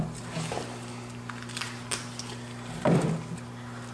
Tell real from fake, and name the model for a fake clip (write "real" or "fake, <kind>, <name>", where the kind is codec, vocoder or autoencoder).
real